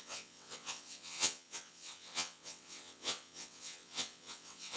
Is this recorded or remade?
remade